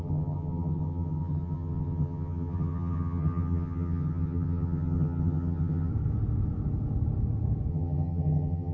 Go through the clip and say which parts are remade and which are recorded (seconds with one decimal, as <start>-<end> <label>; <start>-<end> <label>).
0.0-5.9 remade; 5.9-7.7 recorded; 7.7-8.7 remade